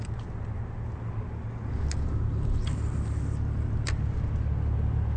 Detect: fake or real real